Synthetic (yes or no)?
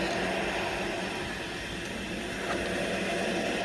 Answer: no